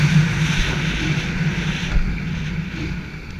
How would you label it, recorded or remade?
recorded